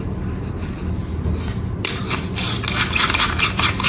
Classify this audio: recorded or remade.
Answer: recorded